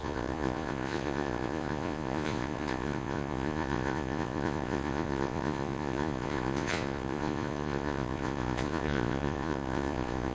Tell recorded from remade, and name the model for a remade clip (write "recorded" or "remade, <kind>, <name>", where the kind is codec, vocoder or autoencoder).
remade, vocoder, Vocos